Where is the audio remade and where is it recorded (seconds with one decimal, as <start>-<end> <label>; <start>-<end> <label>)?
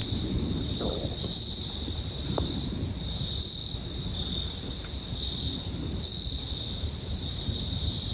0.0-1.2 recorded; 1.2-3.6 remade; 3.6-5.5 recorded; 5.5-6.1 remade; 6.1-6.8 recorded; 6.8-8.1 remade